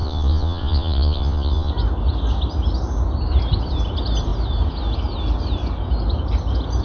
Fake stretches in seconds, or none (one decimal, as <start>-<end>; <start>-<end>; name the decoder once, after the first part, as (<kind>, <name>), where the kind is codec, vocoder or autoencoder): 0.0-1.7 (vocoder, Vocos)